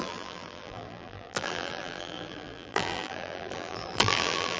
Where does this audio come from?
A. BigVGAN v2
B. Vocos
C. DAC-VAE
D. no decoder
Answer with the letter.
A